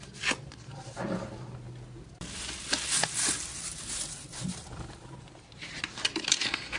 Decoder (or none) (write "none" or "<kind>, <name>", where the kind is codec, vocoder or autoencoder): none